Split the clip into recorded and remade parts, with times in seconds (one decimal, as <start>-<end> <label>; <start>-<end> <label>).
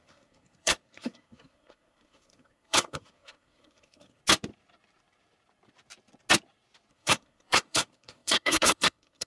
0.0-4.2 remade; 4.2-6.9 recorded; 6.9-9.3 remade